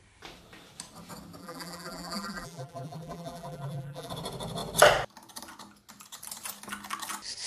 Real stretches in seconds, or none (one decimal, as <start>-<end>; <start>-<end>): 0.0-1.4; 4.1-7.5